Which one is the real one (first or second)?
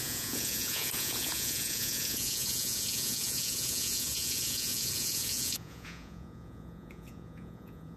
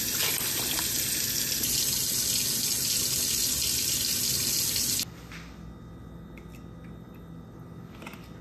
second